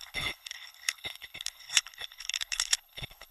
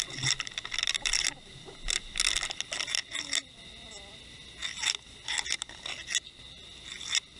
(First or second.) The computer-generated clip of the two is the first